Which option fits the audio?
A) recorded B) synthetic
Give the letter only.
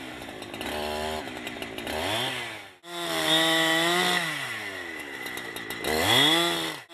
A